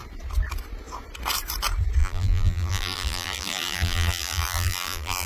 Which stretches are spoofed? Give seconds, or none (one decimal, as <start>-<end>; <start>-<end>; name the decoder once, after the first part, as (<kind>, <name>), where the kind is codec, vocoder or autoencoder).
2.0-5.3 (vocoder, BigVGAN v2)